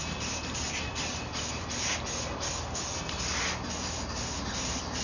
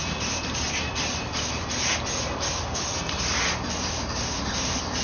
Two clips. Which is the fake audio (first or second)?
second